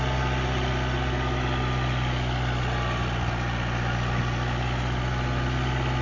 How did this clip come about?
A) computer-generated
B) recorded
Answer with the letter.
B